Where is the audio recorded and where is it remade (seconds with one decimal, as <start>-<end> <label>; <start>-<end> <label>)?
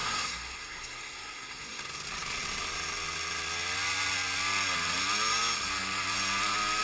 0.0-1.8 remade; 1.8-6.8 recorded